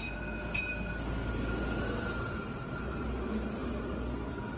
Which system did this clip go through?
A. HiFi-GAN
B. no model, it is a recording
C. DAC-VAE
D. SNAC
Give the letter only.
B